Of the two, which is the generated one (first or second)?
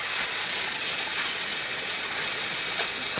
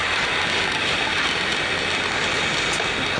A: first